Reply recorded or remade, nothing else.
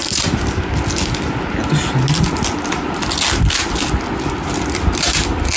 recorded